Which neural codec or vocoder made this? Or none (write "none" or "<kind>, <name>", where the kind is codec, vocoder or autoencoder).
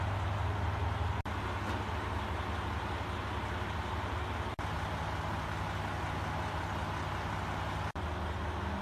none